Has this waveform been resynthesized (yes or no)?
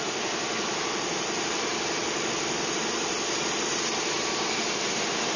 no